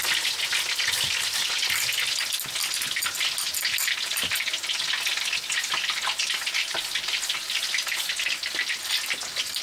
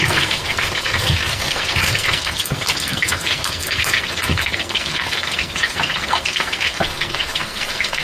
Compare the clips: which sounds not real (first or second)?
second